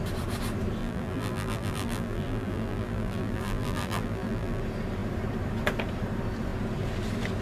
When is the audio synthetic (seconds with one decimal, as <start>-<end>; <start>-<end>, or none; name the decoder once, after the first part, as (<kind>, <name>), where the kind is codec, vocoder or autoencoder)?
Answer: 0.8-4.6 (vocoder, BigVGAN v2)